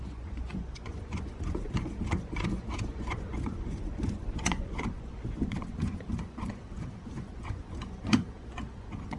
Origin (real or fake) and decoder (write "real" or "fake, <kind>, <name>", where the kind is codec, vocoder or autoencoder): fake, vocoder, Vocos